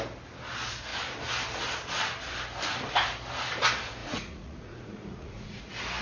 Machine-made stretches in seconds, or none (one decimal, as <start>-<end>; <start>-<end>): 4.0-5.6